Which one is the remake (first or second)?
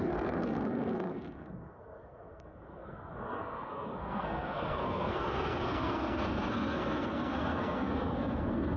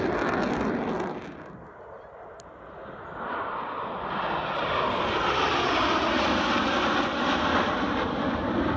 first